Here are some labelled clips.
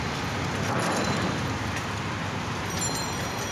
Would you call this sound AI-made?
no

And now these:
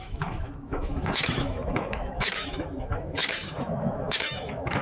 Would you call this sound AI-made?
yes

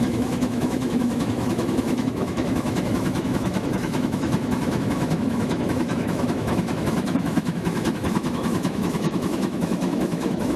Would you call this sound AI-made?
yes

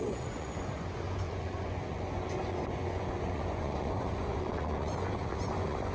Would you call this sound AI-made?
yes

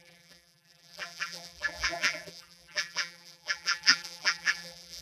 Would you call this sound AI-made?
yes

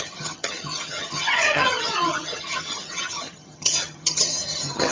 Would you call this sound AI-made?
yes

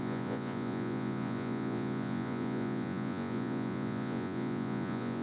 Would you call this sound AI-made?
yes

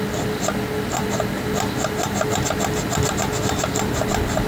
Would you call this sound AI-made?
no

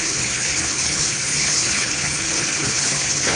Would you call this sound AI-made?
yes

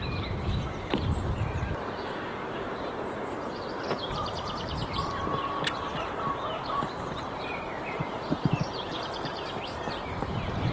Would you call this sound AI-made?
yes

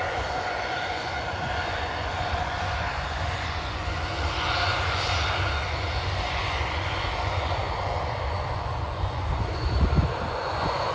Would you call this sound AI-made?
yes